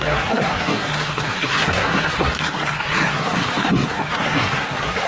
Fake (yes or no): yes